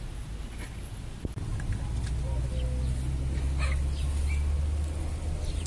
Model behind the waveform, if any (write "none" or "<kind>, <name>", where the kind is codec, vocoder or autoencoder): none